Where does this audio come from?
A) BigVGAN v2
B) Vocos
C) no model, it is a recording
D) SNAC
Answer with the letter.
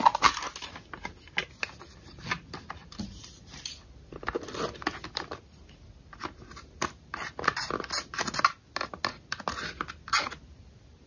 C